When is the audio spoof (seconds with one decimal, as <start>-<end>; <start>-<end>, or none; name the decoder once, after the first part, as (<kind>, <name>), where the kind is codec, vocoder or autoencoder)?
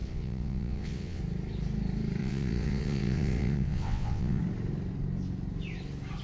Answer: 0.0-1.2 (vocoder, WaveNeXt); 2.2-4.4